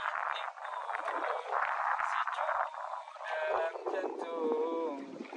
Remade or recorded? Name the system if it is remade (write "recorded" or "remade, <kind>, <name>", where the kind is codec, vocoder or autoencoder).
recorded